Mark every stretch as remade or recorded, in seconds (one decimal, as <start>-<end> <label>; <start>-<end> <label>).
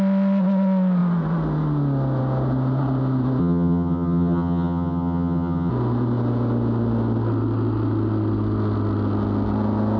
0.0-3.4 recorded; 3.4-5.7 remade; 5.7-10.0 recorded